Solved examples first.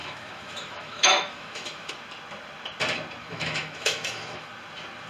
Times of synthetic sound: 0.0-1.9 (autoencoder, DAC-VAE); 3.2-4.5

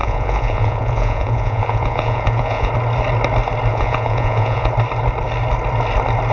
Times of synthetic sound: 0.0-2.7 (vocoder, Vocos); 3.7-4.7

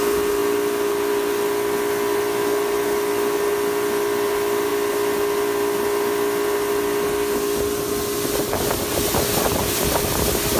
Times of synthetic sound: none

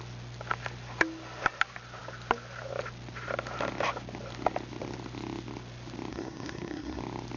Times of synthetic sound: 6.1-7.0 (codec, SNAC)

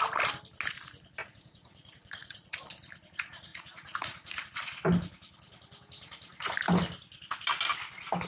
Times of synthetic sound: 1.2-2.6 (vocoder, Vocos); 3.5-4.5

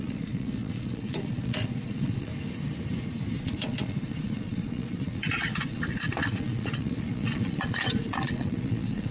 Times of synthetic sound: 0.0-2.3 (vocoder, Vocos); 3.4-9.1